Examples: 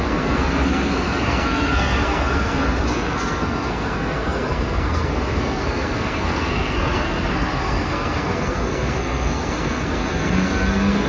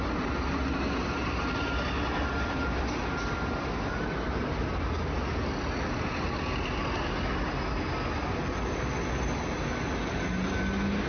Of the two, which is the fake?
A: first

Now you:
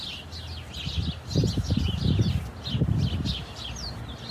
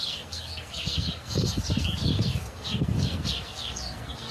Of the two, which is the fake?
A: second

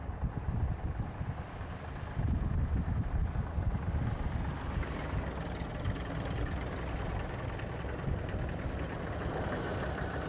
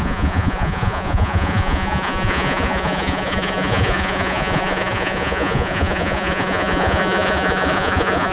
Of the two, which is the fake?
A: second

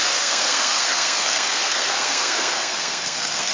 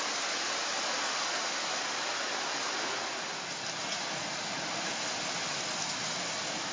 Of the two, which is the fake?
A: first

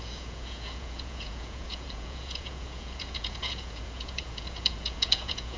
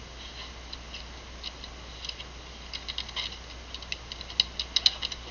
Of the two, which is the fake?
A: first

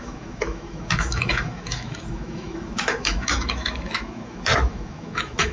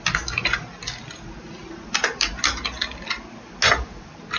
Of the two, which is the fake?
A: first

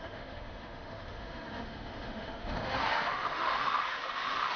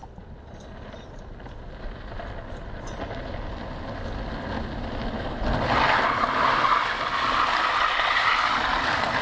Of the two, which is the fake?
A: first